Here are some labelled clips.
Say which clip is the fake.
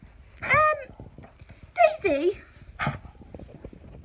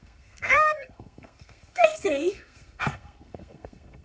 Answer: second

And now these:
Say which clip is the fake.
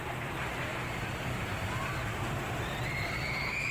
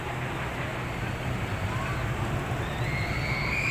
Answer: first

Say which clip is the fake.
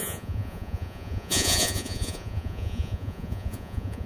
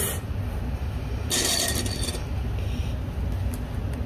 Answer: first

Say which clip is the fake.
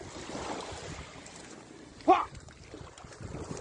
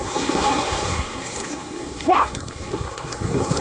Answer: second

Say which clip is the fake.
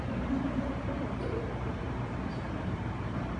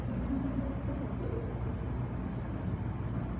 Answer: first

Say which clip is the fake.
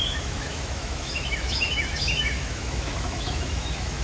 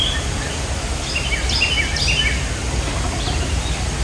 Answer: first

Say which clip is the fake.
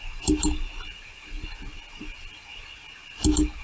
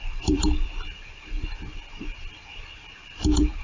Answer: second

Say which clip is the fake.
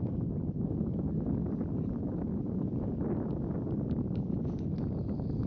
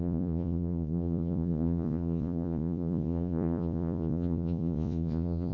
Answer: second